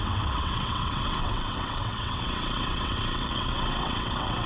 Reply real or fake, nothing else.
fake